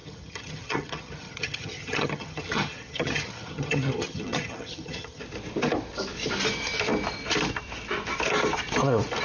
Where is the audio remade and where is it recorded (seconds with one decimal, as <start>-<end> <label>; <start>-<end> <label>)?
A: 0.0-5.2 remade; 5.2-9.2 recorded